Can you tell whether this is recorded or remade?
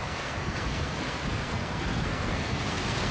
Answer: remade